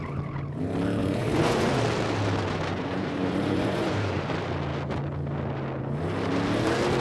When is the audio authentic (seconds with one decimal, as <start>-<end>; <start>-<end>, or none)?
0.0-1.0; 1.7-2.7; 4.3-7.0